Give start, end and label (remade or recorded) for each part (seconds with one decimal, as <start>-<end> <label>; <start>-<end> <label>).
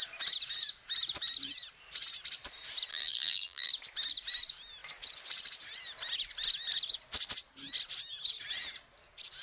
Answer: 0.0-2.9 recorded; 2.9-3.7 remade; 3.7-9.4 recorded